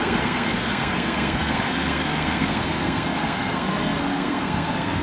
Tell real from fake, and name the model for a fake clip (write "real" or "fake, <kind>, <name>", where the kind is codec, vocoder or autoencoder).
fake, codec, SNAC